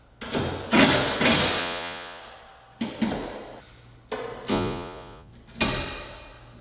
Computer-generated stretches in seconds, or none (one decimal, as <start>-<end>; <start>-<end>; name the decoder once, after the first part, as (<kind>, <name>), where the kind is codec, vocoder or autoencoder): 1.6-2.2 (vocoder, Vocos); 4.5-5.3